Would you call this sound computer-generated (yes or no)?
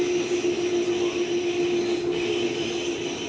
no